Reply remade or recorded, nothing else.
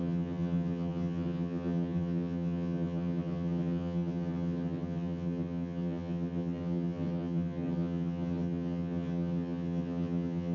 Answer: remade